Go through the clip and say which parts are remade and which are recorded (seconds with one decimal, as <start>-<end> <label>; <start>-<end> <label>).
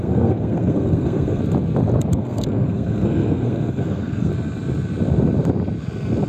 0.0-1.4 remade; 1.4-2.1 recorded; 2.1-4.3 remade; 4.3-6.3 recorded